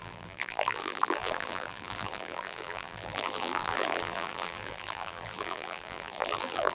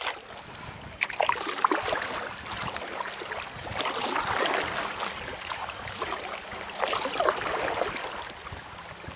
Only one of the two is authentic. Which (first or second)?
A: second